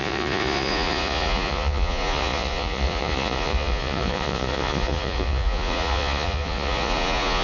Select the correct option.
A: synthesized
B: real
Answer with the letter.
A